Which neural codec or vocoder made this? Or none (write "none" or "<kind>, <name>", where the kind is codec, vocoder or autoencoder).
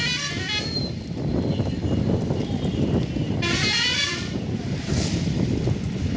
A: vocoder, BigVGAN v2